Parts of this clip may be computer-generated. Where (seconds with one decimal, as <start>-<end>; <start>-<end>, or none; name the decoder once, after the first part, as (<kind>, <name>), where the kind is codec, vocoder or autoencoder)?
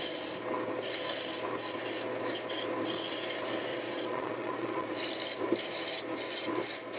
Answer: 3.7-4.9 (vocoder, Vocos)